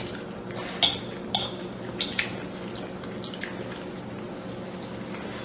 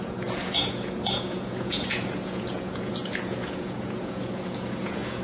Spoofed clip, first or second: second